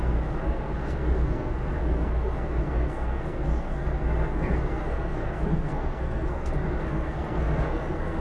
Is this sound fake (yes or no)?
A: yes